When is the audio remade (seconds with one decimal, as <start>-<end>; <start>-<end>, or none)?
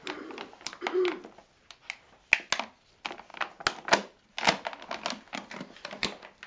none